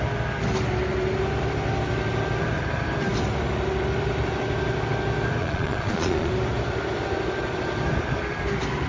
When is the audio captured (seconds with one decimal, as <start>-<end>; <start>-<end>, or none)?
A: 0.0-5.4; 6.3-8.9